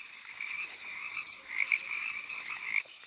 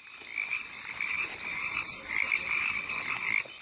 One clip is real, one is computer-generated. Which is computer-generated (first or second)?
first